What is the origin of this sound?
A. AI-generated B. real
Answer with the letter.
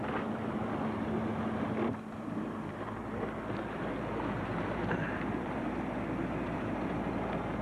B